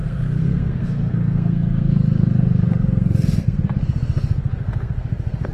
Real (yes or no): no